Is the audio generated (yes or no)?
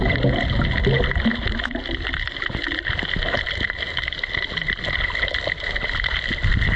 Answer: no